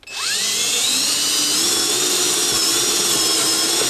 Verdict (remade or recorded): recorded